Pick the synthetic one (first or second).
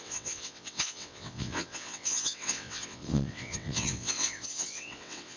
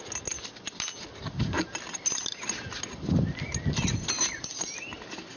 first